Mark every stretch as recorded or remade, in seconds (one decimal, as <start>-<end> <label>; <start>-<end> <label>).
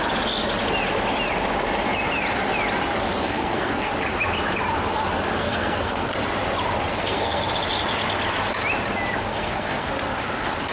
0.0-3.2 recorded; 3.2-3.9 remade; 3.9-5.4 recorded; 5.4-6.1 remade; 6.1-6.9 recorded; 6.9-7.5 remade; 7.5-9.3 recorded; 9.3-9.9 remade; 9.9-10.7 recorded